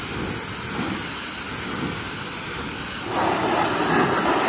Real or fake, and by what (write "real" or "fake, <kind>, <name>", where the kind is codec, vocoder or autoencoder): real